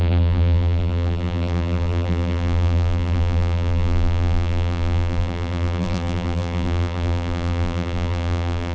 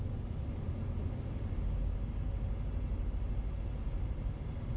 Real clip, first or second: second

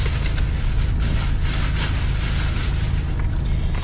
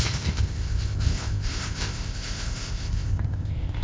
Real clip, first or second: first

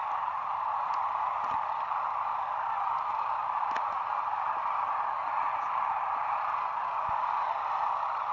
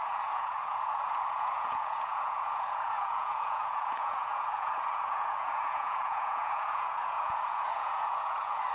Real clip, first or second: first